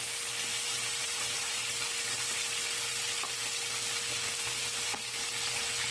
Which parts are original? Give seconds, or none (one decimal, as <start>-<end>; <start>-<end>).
0.0-0.5; 1.6-4.5; 5.3-5.9